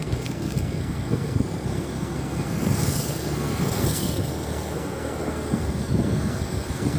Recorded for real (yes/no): no